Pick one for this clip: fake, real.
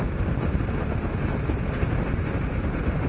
real